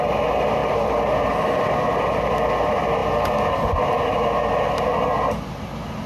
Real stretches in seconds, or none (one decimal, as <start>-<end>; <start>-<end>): 0.0-6.1